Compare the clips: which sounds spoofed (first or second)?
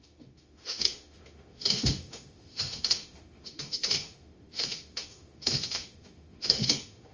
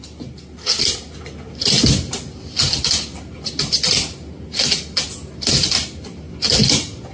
first